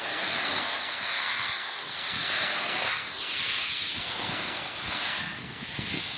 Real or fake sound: fake